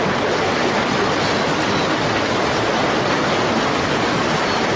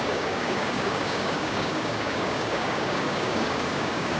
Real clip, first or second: first